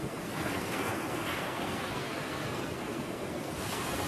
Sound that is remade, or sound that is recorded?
remade